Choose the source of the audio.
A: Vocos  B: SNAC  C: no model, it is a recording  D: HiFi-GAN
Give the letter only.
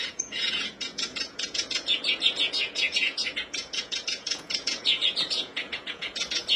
A